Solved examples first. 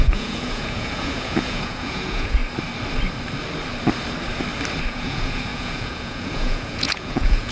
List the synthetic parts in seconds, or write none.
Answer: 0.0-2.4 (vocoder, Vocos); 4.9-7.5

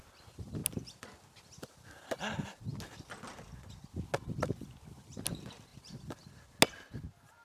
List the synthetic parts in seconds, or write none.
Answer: none

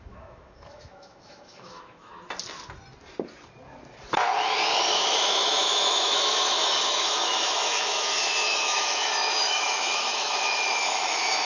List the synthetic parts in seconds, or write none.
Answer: 0.0-2.1 (autoencoder, DAC-VAE); 4.8-11.4